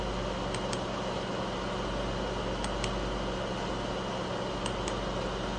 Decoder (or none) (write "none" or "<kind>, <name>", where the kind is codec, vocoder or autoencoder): none